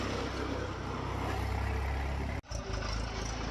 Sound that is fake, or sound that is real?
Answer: real